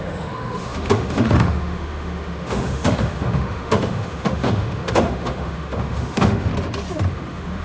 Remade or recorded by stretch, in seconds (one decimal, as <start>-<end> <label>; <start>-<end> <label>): 0.0-6.5 remade; 6.5-7.1 recorded; 7.1-7.6 remade